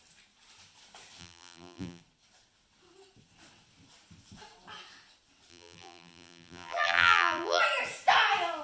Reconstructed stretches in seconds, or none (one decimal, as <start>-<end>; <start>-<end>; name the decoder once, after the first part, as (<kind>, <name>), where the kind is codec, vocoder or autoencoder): 1.2-2.0 (vocoder, BigVGAN v2); 5.5-7.6